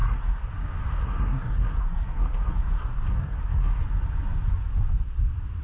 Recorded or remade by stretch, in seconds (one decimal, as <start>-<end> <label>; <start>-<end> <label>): 0.0-0.5 remade; 0.5-1.0 recorded; 1.0-3.8 remade; 3.8-5.6 recorded